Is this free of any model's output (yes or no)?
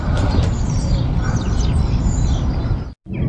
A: yes